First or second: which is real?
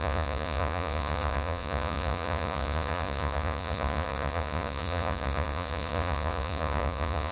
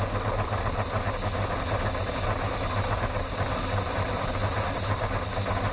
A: second